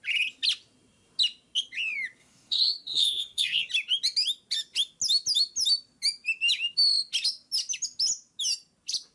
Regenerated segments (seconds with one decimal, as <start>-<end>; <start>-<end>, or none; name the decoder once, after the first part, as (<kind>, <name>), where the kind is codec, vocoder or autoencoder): 2.2-3.7 (codec, SNAC)